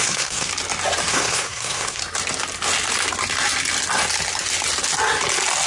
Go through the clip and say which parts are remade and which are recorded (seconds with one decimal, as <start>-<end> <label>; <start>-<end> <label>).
0.0-0.5 remade; 0.5-1.1 recorded; 1.1-2.0 remade; 2.0-5.7 recorded

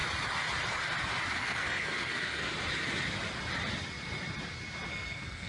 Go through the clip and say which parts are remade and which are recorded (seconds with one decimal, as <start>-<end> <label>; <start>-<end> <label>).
0.0-1.4 recorded; 1.4-2.5 remade; 2.5-4.9 recorded; 4.9-5.5 remade

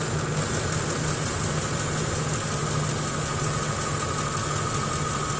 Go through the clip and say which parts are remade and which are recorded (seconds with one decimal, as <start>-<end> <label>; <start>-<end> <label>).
0.0-5.4 recorded

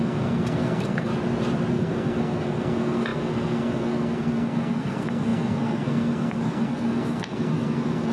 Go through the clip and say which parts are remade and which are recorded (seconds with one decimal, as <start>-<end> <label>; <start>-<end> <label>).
0.0-1.1 remade; 1.1-1.7 recorded; 1.7-8.1 remade

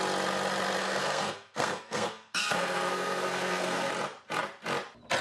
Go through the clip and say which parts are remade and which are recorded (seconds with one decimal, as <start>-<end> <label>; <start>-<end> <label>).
0.0-0.8 recorded; 0.8-3.9 remade; 3.9-5.2 recorded

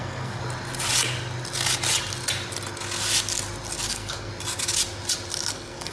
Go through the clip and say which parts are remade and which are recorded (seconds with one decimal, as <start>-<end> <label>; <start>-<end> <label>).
0.0-0.4 remade; 0.4-3.9 recorded; 3.9-4.3 remade; 4.3-5.5 recorded; 5.5-5.9 remade